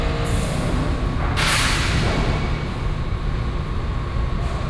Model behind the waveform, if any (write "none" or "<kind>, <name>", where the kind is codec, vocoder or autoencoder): none